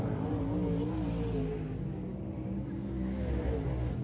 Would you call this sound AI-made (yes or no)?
no